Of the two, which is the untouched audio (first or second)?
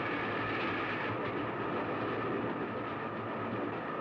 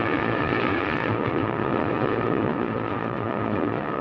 first